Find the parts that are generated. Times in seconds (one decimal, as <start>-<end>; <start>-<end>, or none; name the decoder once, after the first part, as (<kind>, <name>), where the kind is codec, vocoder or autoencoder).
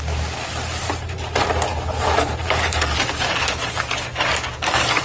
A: 1.7-5.0 (codec, DAC)